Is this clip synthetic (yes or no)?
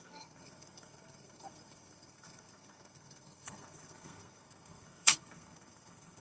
yes